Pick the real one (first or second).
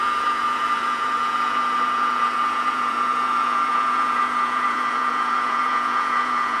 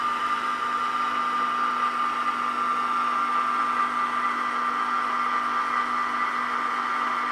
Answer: second